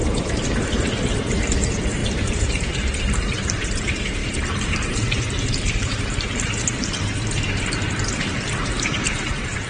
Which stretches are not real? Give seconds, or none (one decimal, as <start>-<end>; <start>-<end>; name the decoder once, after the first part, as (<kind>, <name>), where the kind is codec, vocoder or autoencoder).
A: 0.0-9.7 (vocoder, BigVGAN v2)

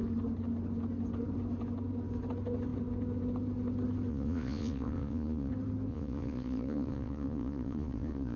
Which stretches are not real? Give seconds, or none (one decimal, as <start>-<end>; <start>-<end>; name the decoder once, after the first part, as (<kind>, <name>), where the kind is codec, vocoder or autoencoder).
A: 4.1-5.5 (vocoder, Vocos); 5.9-8.4

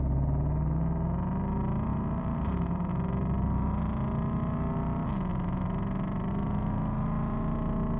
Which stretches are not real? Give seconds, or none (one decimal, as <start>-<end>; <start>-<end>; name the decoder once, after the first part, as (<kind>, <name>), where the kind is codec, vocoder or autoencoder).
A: 1.9-2.9 (vocoder, BigVGAN v2); 5.3-6.3

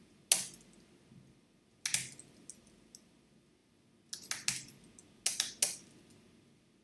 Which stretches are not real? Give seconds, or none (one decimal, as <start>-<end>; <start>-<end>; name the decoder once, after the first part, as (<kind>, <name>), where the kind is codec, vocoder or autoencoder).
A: none

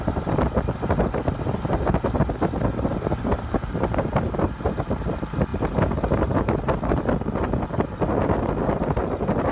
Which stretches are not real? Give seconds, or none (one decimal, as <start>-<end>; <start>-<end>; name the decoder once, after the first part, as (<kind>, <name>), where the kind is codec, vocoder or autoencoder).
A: none

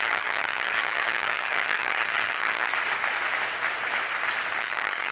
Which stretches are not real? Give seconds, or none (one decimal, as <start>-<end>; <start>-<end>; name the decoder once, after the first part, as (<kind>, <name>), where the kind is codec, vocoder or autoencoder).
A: 0.0-2.7 (vocoder, HiFi-GAN); 4.6-5.1